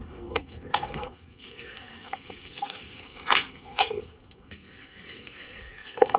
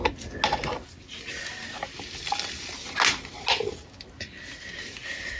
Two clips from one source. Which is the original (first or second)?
second